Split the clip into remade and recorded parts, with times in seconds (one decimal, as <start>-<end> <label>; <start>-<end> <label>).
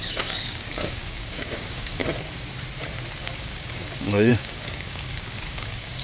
0.0-2.0 remade; 2.0-3.2 recorded; 3.2-6.0 remade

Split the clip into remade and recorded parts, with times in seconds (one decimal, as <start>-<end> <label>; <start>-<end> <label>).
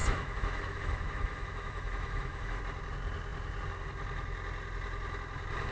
0.0-2.6 remade; 2.6-5.7 recorded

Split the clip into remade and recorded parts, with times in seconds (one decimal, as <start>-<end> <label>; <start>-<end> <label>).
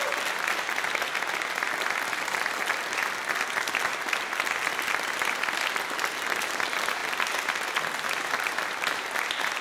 0.0-9.6 recorded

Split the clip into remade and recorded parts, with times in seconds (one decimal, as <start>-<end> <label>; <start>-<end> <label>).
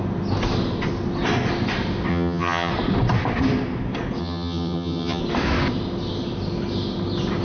0.0-2.1 recorded; 2.1-2.7 remade; 2.7-4.2 recorded; 4.2-5.2 remade; 5.2-7.4 recorded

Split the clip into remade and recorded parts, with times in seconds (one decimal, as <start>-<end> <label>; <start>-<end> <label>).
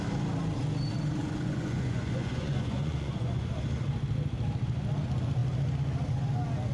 0.0-1.2 recorded; 1.2-3.5 remade; 3.5-6.7 recorded